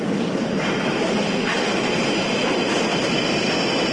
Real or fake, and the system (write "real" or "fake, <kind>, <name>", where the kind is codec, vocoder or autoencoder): real